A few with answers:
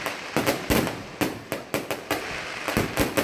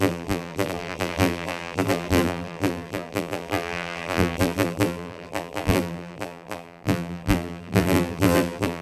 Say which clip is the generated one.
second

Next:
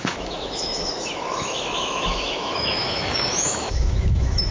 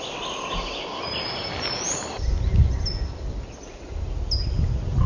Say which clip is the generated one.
first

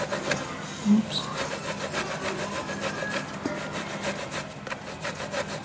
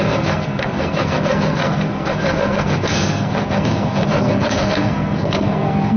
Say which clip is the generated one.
second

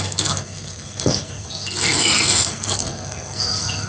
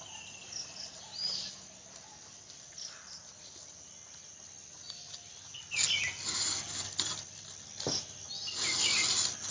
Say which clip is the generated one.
first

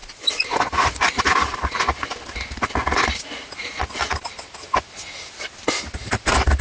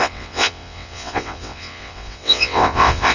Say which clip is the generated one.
second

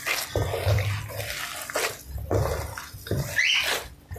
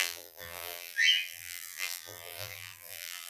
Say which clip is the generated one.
second